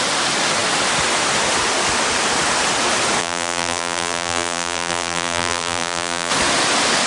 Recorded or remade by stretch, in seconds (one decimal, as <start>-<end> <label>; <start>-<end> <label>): 0.0-3.2 recorded; 3.2-6.3 remade; 6.3-7.1 recorded